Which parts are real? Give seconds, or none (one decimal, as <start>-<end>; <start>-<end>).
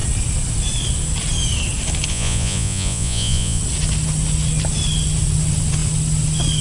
0.0-2.1; 3.6-6.6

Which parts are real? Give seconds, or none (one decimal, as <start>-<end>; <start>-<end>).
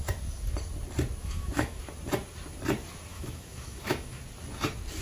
0.0-1.2; 1.8-3.1; 4.2-5.0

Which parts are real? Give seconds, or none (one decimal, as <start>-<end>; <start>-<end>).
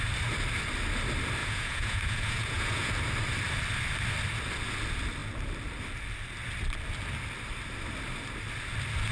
0.0-1.4; 2.9-9.1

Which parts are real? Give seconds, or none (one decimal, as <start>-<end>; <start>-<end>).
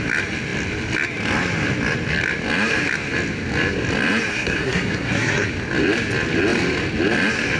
0.0-4.3; 5.5-7.6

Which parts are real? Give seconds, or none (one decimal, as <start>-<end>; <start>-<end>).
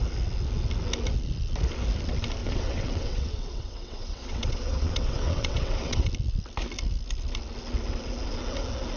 0.0-2.4; 6.1-9.0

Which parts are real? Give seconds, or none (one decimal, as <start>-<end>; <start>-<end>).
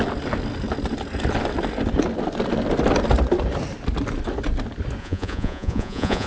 0.0-5.0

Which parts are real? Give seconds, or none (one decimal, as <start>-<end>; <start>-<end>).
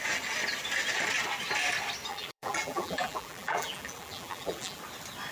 0.0-2.1; 4.8-5.3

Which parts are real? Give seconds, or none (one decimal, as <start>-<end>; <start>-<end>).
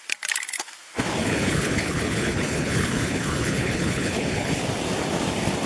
0.0-1.2; 4.6-5.7